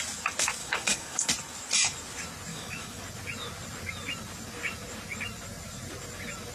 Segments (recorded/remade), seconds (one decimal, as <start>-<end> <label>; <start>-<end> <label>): 0.0-0.6 recorded; 0.6-1.3 remade; 1.3-2.5 recorded; 2.5-3.0 remade; 3.0-6.5 recorded